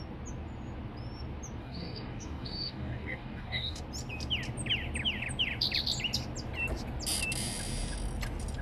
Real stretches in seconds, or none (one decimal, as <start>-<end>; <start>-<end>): 0.0-1.6; 3.8-8.6